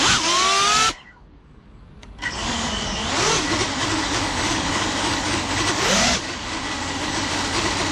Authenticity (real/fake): fake